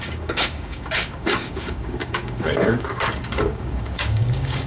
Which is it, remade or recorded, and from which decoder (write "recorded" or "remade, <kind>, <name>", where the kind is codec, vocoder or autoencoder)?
remade, codec, DAC